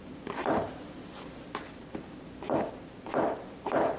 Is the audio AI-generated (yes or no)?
no